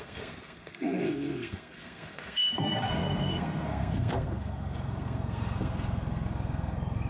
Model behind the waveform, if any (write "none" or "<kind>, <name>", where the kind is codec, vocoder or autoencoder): codec, SNAC